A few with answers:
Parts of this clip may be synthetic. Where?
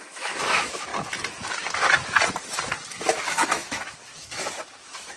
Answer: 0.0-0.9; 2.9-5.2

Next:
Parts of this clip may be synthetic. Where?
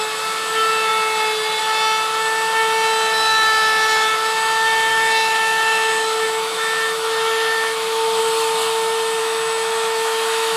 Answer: 4.9-8.2; 9.2-10.6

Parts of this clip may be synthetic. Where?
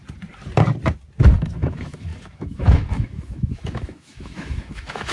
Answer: 1.4-5.1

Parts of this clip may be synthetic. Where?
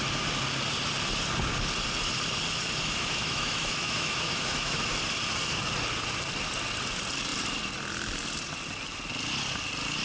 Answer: 2.8-5.0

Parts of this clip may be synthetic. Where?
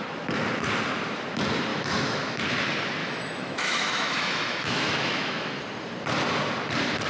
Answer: 1.7-2.4; 3.0-5.6